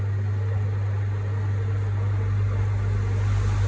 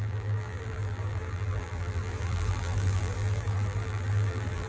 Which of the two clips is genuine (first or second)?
first